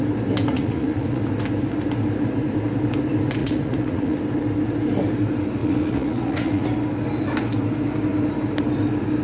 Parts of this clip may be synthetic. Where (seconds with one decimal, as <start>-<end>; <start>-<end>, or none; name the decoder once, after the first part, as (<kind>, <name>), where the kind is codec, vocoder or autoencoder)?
0.5-1.2 (vocoder, Vocos); 3.4-4.2; 5.6-6.6

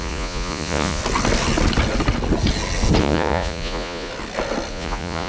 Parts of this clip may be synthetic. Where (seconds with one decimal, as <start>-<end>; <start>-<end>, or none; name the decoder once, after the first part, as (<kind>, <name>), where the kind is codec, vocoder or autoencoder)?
0.0-1.0 (vocoder, Vocos); 3.0-4.1; 4.7-5.3

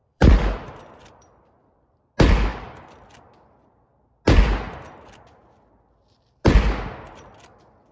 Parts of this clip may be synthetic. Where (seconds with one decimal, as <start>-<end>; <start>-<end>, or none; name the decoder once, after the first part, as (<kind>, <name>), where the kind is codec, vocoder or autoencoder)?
0.0-1.5 (vocoder, BigVGAN v2); 2.5-3.1

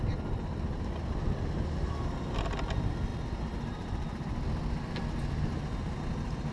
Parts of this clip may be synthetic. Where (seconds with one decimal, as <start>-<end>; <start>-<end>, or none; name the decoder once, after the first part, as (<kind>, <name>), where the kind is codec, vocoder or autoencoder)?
none

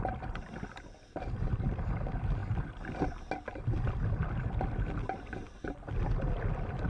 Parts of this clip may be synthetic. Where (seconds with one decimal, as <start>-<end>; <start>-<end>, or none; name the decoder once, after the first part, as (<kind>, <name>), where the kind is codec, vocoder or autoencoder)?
none